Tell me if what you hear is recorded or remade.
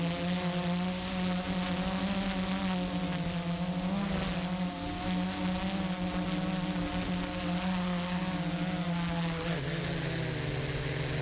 recorded